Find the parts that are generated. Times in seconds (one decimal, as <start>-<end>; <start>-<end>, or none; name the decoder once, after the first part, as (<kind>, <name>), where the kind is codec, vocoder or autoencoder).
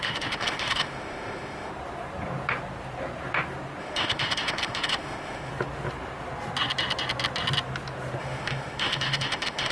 0.0-1.7 (autoencoder, DAC-VAE); 3.8-5.5; 8.2-9.7